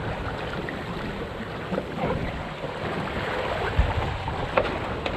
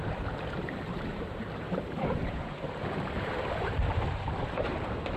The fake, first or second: second